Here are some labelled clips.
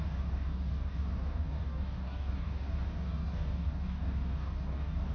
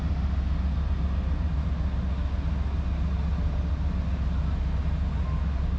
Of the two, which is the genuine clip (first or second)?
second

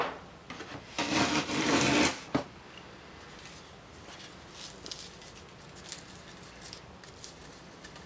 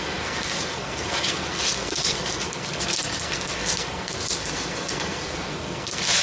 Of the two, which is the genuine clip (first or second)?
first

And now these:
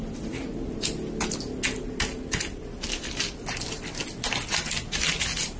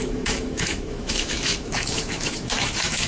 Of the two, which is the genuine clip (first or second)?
first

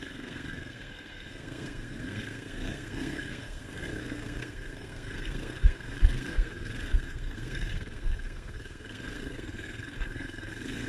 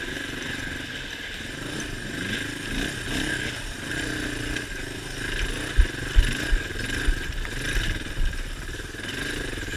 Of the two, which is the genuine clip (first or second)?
second